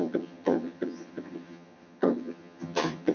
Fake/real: fake